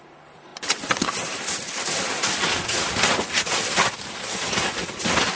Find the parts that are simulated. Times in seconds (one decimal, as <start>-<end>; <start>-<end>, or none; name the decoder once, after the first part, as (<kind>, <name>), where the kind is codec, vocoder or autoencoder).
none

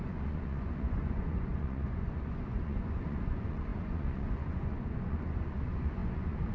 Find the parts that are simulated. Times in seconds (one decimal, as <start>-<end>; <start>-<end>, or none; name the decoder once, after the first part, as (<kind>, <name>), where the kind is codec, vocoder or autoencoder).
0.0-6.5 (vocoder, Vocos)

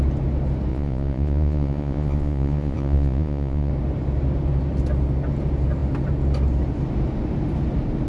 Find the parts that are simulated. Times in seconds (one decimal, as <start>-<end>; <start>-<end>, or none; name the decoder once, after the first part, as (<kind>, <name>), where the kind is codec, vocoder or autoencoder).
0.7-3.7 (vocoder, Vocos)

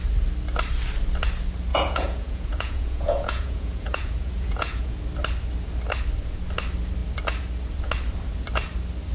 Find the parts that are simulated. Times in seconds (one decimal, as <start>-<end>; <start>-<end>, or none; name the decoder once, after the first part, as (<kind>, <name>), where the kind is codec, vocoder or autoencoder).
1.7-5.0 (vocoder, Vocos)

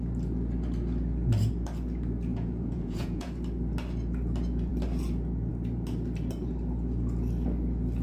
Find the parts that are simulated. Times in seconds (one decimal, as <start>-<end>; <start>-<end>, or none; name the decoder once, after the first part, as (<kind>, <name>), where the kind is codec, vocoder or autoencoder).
2.3-3.3 (vocoder, Vocos)

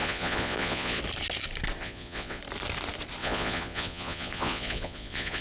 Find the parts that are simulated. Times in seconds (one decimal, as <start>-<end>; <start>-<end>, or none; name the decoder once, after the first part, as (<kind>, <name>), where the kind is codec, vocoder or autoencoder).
0.0-1.0 (vocoder, Vocos); 1.8-2.4; 3.2-5.4

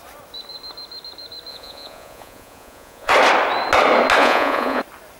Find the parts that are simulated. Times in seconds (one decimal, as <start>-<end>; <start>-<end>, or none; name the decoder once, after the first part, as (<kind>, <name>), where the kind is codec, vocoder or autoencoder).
1.5-3.1 (vocoder, Vocos); 4.2-4.8